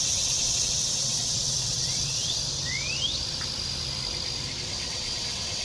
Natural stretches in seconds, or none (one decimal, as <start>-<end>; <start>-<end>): 2.4-4.6